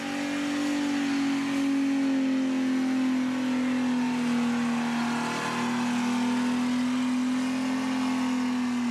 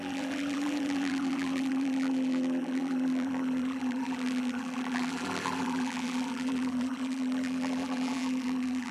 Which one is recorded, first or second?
first